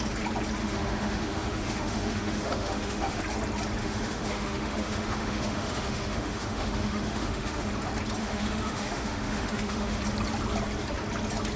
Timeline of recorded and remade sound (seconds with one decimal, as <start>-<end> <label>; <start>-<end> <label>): 0.0-0.6 recorded; 0.6-3.2 remade; 3.2-3.8 recorded; 3.8-7.7 remade; 7.7-8.2 recorded; 8.2-10.0 remade; 10.0-11.6 recorded